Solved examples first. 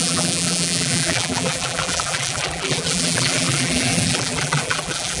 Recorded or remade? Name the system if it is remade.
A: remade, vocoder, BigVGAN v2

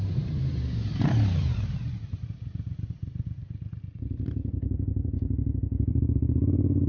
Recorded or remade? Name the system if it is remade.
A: remade, vocoder, BigVGAN v2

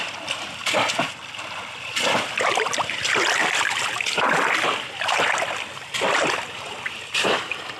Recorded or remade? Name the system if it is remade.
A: remade, vocoder, BigVGAN v2